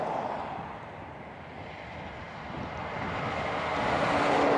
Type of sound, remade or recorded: recorded